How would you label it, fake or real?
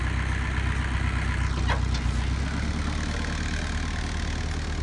real